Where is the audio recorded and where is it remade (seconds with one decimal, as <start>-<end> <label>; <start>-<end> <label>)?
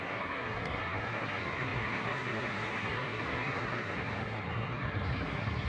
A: 0.0-5.7 remade